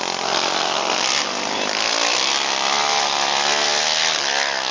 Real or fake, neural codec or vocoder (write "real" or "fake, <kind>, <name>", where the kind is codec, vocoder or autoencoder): real